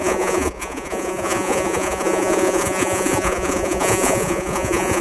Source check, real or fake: fake